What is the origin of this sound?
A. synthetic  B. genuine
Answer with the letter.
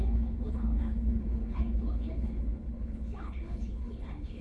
A